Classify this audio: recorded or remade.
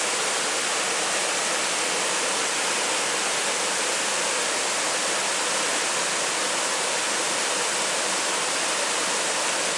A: recorded